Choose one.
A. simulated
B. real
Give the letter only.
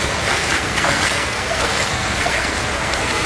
A